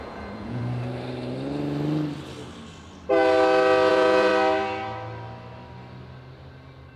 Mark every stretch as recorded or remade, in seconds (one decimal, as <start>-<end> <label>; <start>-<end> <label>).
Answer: 0.0-0.6 remade; 0.6-3.9 recorded; 3.9-4.3 remade; 4.3-7.0 recorded